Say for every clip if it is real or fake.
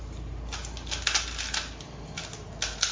real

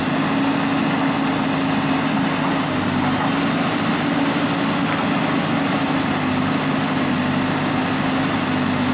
real